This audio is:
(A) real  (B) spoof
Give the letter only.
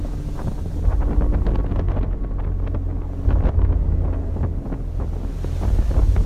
A